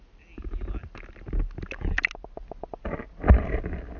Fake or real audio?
real